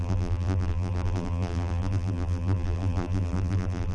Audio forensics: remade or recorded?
remade